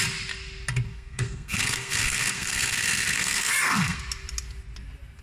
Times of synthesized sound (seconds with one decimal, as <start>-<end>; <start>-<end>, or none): 0.9-4.0